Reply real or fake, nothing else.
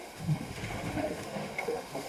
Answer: fake